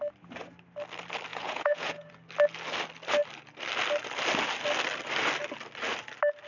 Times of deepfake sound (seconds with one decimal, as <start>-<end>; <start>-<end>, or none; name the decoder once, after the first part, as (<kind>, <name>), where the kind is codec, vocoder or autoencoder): 1.3-2.1 (vocoder, Vocos)